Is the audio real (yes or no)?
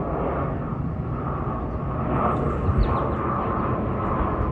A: yes